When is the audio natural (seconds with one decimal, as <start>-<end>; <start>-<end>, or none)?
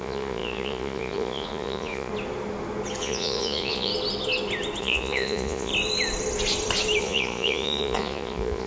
2.1-3.0; 3.9-4.8; 5.7-7.0